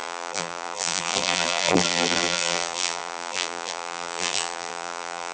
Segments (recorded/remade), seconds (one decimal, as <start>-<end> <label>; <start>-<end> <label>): 0.0-5.3 remade